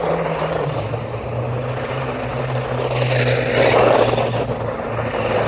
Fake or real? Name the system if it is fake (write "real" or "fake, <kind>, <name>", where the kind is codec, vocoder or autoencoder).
real